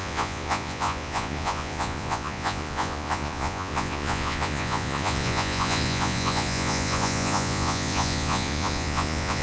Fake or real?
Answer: fake